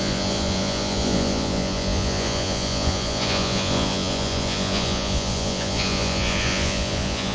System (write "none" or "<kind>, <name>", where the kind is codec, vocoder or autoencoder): vocoder, Vocos